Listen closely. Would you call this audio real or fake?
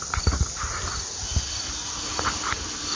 real